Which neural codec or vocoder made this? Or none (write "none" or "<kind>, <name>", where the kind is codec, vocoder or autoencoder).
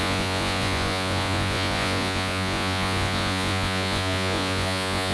vocoder, Vocos